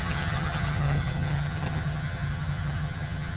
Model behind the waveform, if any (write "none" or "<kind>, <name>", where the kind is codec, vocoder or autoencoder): vocoder, HiFi-GAN